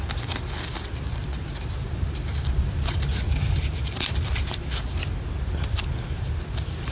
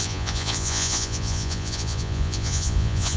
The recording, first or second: first